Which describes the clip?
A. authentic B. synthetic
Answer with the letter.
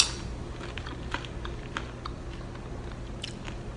A